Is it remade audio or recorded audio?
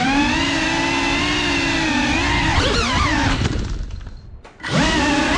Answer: recorded